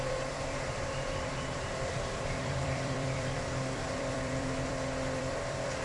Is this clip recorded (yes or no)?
no